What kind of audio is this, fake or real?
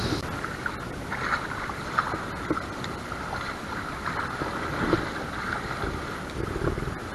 real